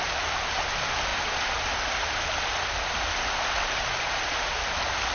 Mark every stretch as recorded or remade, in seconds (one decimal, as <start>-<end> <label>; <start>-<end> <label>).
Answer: 0.0-5.1 recorded